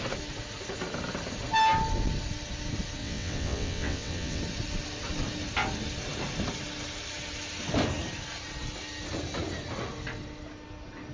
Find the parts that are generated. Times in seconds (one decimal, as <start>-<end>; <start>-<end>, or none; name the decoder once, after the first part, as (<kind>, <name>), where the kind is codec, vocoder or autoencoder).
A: 3.0-4.4 (vocoder, WaveNeXt)